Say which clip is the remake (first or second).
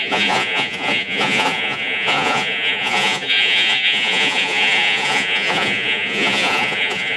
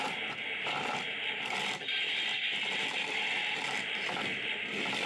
first